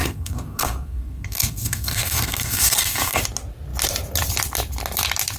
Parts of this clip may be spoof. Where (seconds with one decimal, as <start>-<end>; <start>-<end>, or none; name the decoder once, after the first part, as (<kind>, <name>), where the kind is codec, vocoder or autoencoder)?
0.0-3.2 (codec, SNAC)